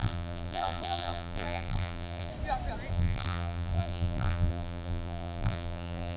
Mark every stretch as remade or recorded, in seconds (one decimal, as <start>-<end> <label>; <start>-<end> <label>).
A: 0.0-2.3 remade; 2.3-2.9 recorded; 2.9-6.2 remade